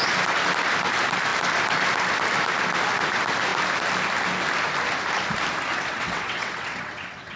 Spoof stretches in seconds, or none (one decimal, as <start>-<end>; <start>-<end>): 5.7-7.4